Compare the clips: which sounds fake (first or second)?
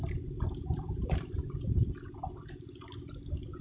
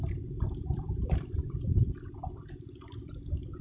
second